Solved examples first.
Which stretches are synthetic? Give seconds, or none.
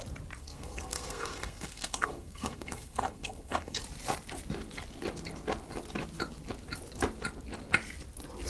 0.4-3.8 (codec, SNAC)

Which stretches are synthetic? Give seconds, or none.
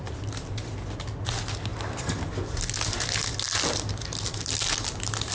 none